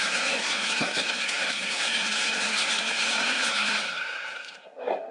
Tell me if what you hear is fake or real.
fake